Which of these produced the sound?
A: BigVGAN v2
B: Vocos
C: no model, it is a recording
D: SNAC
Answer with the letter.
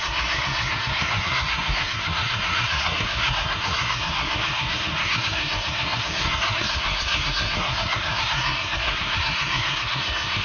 D